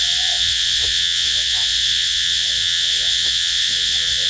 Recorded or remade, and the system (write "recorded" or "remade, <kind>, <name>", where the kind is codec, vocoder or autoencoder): remade, vocoder, WaveNeXt